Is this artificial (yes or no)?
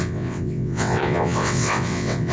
yes